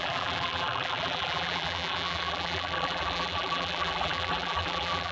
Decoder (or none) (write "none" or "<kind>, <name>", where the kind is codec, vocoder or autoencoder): vocoder, BigVGAN v2